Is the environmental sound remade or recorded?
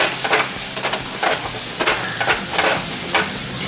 recorded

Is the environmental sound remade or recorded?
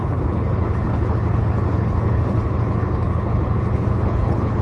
remade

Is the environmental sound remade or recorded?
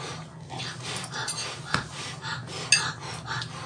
recorded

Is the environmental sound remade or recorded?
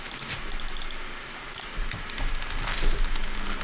recorded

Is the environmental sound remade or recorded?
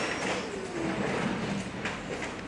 recorded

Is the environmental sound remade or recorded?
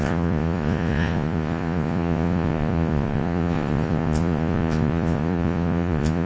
remade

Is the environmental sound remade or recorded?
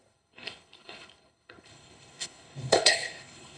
remade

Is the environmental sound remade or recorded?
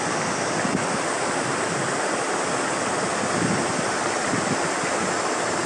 recorded